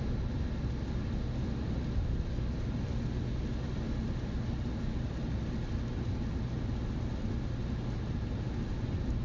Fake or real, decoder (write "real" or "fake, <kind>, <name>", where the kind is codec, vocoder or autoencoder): real